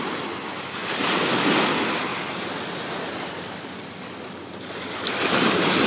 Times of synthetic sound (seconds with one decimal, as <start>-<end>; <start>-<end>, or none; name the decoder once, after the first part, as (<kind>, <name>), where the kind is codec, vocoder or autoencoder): none